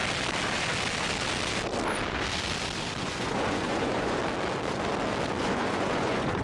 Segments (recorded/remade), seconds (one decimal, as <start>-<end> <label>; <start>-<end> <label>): 0.0-3.0 recorded; 3.0-4.2 remade; 4.2-5.4 recorded; 5.4-6.4 remade